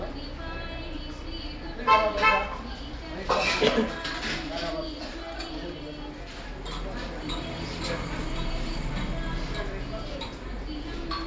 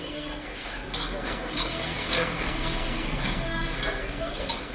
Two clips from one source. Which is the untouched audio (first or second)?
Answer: first